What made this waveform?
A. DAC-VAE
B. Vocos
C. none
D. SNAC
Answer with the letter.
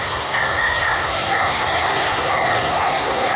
D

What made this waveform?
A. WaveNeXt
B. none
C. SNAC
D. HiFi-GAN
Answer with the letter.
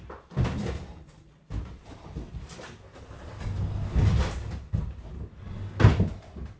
B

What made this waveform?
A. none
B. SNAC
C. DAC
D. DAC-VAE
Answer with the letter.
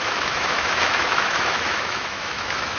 D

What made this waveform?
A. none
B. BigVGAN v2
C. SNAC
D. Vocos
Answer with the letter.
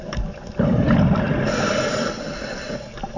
A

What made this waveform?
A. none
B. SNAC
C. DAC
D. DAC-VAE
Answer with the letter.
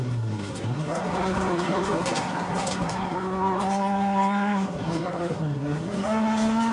B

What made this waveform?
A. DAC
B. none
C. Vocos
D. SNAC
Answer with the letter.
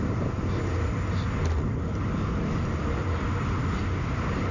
B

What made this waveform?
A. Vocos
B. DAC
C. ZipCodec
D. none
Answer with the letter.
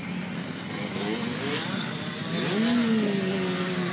D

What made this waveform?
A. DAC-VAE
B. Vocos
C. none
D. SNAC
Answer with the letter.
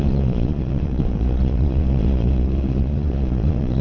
B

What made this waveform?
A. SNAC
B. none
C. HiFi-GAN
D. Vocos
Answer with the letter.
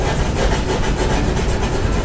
B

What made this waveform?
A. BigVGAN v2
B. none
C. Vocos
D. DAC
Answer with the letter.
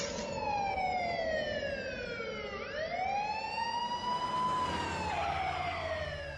B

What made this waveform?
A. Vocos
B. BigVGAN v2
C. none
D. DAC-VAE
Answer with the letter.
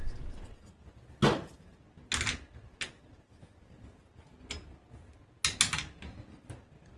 C